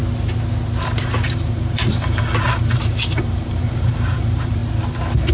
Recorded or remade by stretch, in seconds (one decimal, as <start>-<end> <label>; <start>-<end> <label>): 0.0-1.0 recorded; 1.0-4.6 remade; 4.6-5.3 recorded